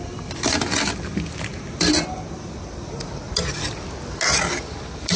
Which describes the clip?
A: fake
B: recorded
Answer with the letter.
B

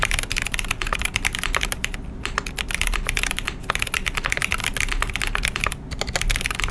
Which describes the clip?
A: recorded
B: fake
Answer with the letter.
A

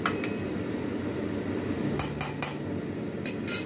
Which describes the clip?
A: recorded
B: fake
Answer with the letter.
A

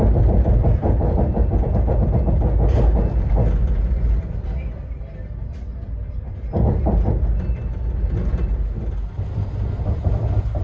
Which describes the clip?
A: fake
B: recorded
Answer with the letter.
B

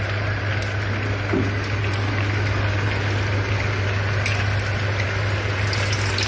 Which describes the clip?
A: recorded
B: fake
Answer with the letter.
A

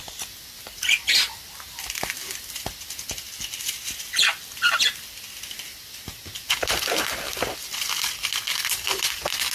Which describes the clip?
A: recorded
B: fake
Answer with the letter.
A